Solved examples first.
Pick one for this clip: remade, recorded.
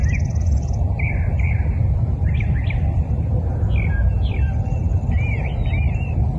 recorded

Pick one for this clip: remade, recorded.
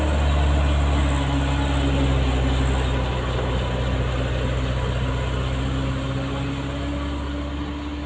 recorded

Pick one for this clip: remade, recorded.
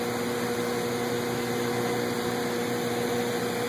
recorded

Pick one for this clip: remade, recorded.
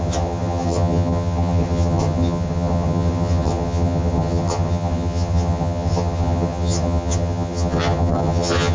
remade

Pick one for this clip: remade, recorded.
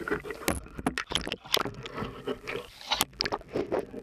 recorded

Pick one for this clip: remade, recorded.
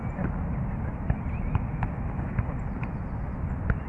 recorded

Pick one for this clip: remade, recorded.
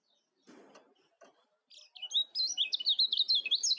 recorded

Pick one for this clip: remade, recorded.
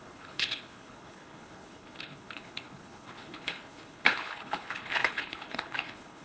remade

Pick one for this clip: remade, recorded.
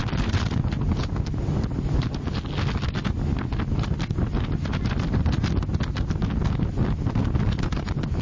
recorded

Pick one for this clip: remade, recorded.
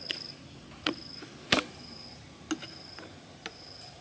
recorded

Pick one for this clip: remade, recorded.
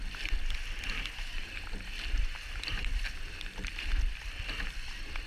recorded